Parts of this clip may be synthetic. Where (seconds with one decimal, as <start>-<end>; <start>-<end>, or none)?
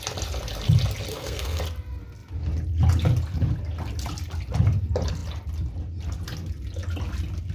1.1-1.6